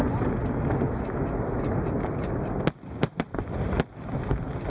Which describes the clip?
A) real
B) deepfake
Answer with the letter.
A